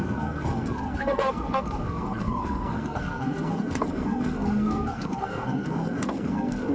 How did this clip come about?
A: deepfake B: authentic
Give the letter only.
A